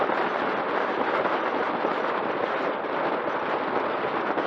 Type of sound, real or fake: real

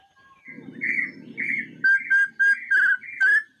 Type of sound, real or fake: real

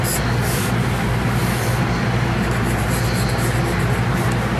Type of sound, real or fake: real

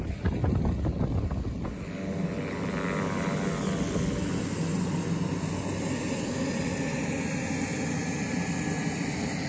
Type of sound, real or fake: real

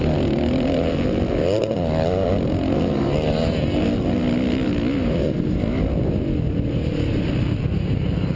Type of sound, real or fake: real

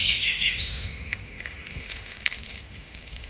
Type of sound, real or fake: fake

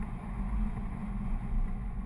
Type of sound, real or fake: fake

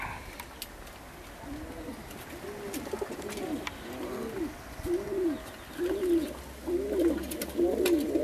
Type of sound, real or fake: real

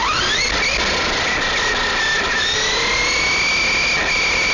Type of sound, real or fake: real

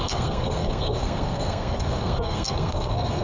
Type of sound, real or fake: fake